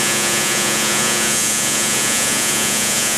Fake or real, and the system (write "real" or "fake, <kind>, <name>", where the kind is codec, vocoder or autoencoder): fake, vocoder, Vocos